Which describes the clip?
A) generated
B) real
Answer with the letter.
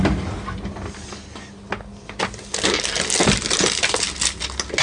B